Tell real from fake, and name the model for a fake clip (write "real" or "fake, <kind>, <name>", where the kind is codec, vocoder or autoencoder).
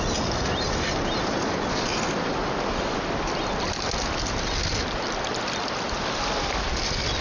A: real